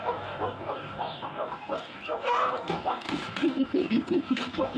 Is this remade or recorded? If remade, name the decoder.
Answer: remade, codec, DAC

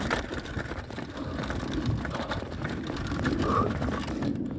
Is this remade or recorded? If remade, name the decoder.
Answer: recorded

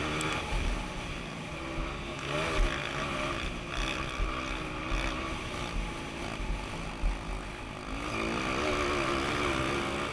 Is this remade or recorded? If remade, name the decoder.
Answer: recorded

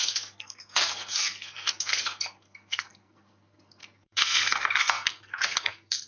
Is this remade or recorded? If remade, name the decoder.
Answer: remade, codec, SNAC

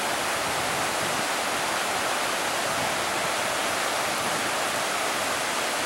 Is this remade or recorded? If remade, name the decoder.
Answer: recorded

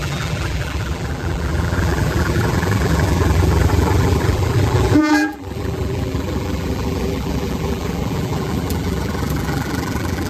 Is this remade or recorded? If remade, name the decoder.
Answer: remade, vocoder, BigVGAN v2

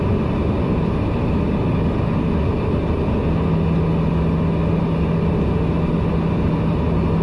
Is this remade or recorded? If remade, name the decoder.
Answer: recorded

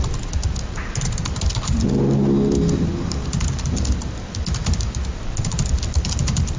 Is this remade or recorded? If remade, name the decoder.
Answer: recorded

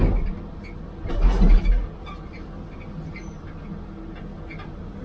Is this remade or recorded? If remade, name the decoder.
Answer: recorded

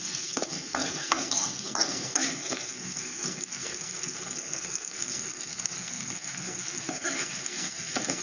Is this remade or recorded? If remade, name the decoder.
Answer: remade, codec, SNAC